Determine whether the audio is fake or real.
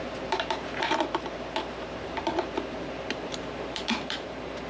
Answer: fake